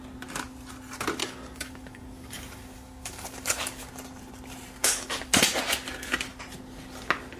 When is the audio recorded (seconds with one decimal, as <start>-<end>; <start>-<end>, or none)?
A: 0.0-1.2; 3.9-4.8; 5.4-7.4